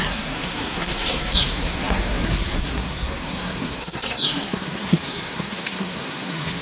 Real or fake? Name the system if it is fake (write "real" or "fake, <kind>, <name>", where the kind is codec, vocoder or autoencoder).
fake, codec, SNAC